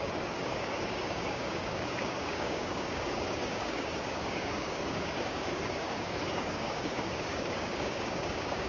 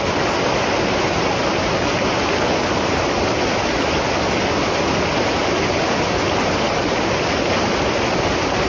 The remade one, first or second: first